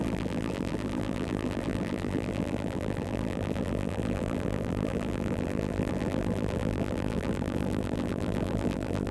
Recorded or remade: remade